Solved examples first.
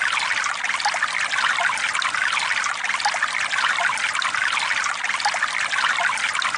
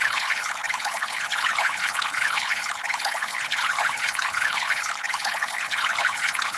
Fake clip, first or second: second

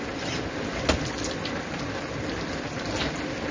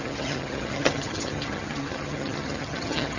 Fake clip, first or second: second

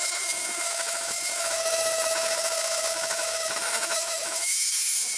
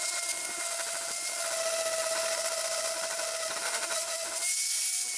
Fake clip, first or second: first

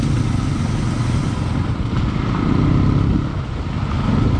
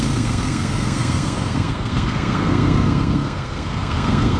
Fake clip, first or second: second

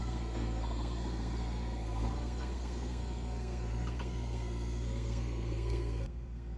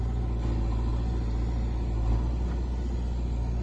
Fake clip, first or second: first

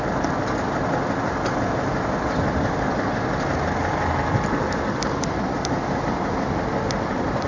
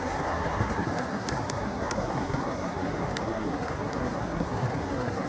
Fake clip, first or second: second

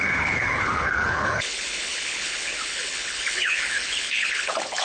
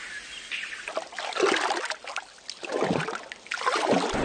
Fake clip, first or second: first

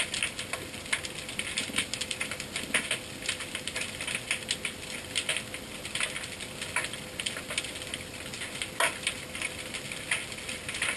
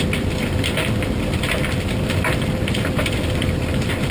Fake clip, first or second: second